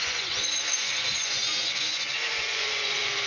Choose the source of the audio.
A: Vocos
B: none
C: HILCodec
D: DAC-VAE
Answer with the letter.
A